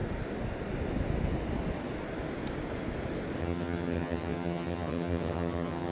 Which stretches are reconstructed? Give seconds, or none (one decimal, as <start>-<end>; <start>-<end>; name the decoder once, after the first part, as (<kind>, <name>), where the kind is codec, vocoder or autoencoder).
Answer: 3.4-5.9 (vocoder, HiFi-GAN)